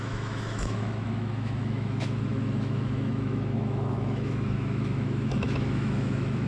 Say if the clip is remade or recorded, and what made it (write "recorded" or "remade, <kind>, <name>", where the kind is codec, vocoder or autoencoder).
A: remade, autoencoder, DAC-VAE